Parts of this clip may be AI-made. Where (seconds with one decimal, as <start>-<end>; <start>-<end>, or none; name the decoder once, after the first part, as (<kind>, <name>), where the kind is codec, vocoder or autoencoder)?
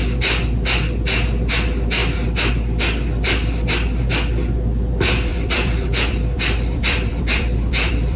5.3-8.2 (vocoder, BigVGAN v2)